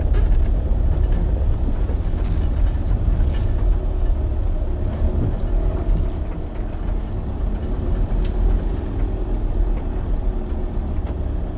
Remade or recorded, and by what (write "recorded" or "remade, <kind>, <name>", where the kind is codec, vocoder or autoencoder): recorded